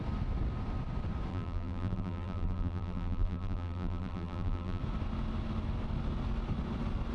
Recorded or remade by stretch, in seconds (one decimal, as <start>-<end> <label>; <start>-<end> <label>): 0.0-1.3 recorded; 1.3-4.8 remade; 4.8-7.1 recorded